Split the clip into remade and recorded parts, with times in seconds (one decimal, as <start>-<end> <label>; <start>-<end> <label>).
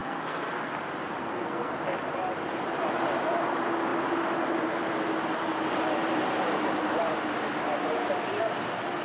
0.0-0.7 remade; 0.7-1.2 recorded; 1.2-1.7 remade; 1.7-9.0 recorded